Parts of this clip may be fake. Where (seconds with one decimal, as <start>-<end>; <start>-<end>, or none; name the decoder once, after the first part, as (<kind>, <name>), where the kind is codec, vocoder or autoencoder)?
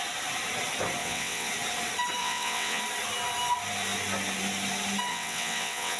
1.0-1.5 (vocoder, WaveNeXt); 2.2-2.8; 5.1-6.0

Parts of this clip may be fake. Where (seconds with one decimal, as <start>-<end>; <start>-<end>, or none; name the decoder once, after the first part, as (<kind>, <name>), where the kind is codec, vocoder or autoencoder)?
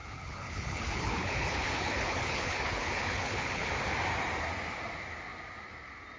0.0-3.7 (codec, HILCodec)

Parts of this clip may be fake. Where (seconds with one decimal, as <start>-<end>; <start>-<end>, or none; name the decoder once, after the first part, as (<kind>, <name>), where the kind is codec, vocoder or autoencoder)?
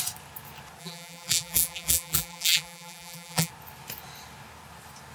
0.8-3.5 (vocoder, BigVGAN v2)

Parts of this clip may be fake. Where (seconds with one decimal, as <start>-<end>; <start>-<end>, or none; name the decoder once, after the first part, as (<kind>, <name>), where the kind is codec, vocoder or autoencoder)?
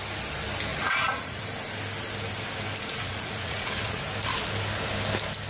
0.7-1.4 (vocoder, Vocos); 2.9-4.0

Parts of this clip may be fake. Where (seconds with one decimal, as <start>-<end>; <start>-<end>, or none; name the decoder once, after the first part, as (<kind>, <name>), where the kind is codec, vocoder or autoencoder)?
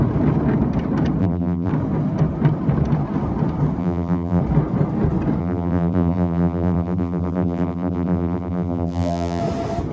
1.2-1.7 (vocoder, BigVGAN v2); 3.8-4.4; 5.4-9.4